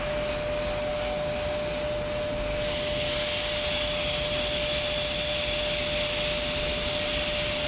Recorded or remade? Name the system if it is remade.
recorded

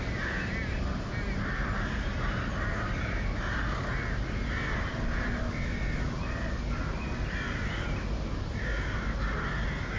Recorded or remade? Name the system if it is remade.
recorded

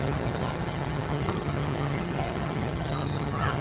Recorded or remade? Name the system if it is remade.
remade, vocoder, HiFi-GAN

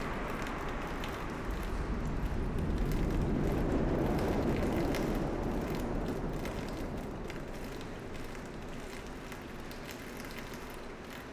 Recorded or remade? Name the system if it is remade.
recorded